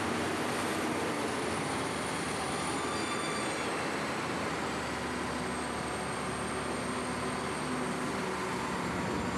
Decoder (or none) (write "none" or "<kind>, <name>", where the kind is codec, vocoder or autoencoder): none